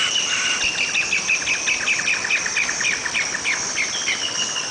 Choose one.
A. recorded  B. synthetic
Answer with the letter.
A